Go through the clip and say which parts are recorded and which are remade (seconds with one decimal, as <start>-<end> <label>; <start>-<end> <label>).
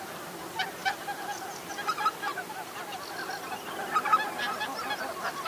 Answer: 0.0-0.8 recorded; 0.8-1.7 remade; 1.7-2.3 recorded; 2.3-3.1 remade; 3.1-5.5 recorded